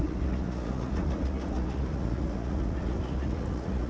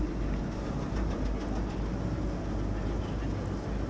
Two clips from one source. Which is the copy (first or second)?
first